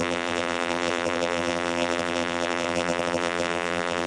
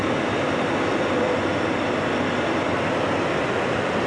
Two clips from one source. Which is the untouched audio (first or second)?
second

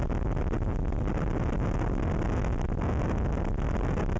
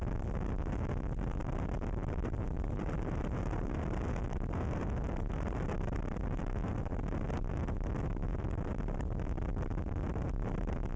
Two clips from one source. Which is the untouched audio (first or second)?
first